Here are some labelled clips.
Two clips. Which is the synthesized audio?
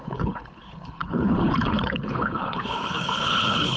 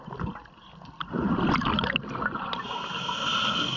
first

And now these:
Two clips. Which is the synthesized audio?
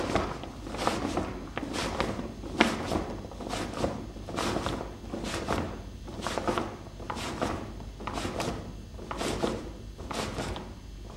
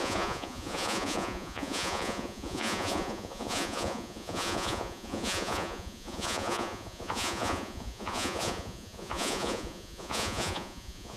second